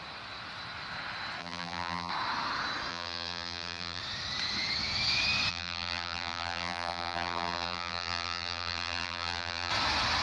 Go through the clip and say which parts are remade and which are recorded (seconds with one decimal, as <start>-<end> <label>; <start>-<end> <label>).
0.0-1.4 recorded; 1.4-2.1 remade; 2.1-2.9 recorded; 2.9-4.0 remade; 4.0-5.5 recorded; 5.5-9.7 remade; 9.7-10.2 recorded